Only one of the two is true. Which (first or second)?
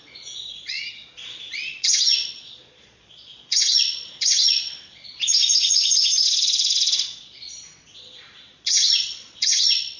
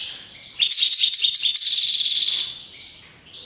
second